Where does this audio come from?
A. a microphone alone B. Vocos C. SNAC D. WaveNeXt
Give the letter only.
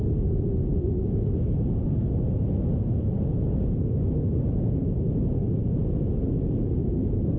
A